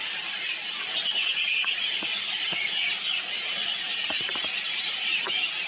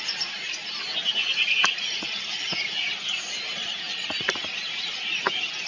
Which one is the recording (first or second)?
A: second